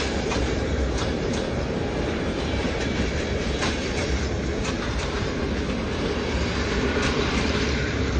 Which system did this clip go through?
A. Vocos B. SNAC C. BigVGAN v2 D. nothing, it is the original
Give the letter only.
C